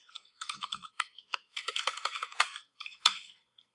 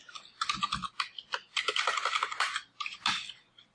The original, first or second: second